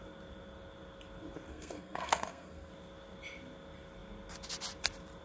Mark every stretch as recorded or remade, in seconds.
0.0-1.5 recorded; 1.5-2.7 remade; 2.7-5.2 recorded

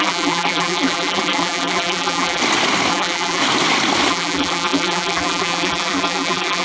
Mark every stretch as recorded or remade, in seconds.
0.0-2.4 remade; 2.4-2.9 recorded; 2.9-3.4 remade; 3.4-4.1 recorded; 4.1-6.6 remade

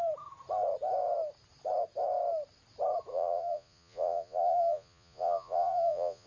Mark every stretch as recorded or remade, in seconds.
0.0-3.1 recorded; 3.1-6.3 remade

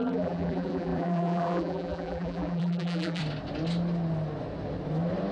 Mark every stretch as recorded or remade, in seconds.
0.0-3.2 remade; 3.2-5.3 recorded

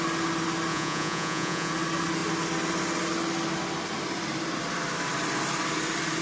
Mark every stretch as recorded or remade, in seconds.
0.0-0.7 recorded; 0.7-1.7 remade; 1.7-6.2 recorded

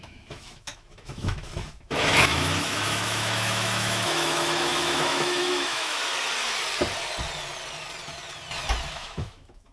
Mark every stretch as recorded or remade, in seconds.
0.0-6.0 remade; 6.0-8.9 recorded; 8.9-9.7 remade